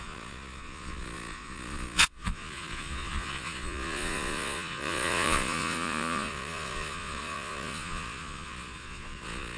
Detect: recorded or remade remade